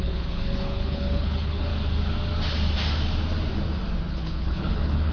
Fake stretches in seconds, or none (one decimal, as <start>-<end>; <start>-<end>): 0.0-1.7; 4.1-5.1